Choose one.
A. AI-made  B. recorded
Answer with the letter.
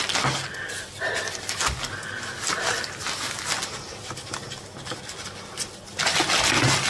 B